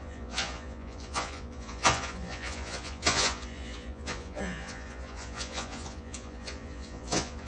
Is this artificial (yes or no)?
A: yes